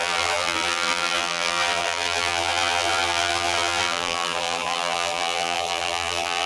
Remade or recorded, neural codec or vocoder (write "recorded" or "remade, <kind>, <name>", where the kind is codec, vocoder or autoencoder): remade, vocoder, BigVGAN v2